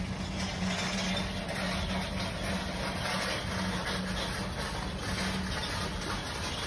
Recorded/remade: recorded